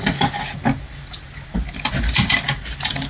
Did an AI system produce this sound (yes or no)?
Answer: no